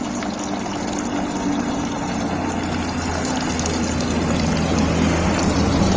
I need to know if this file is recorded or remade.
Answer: recorded